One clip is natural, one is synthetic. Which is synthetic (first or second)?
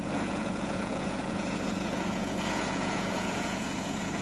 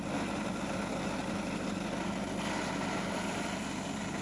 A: first